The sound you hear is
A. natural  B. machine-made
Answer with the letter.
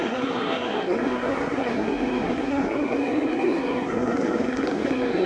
B